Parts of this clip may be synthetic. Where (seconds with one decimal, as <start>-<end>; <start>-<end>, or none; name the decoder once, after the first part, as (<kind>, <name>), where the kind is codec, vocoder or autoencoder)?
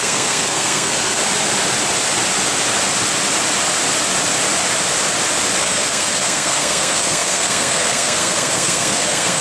0.0-1.2 (codec, SNAC); 5.6-9.4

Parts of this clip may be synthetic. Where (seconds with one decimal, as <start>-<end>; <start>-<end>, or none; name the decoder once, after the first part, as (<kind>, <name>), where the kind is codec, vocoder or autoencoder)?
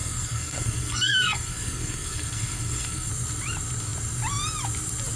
0.0-3.1 (codec, SNAC)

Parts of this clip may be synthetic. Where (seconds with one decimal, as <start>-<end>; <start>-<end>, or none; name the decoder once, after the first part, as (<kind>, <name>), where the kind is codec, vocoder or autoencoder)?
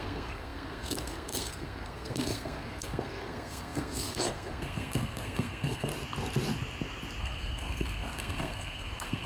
0.0-5.9 (codec, SNAC); 7.2-9.3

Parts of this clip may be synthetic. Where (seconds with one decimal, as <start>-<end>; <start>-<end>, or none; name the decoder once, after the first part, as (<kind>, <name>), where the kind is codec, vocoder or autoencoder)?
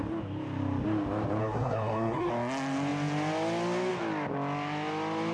1.4-2.3 (codec, SNAC)